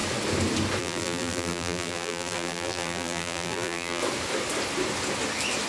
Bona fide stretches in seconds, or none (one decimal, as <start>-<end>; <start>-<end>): 0.0-0.8; 4.0-5.7